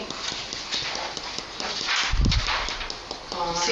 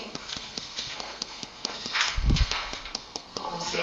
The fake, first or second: second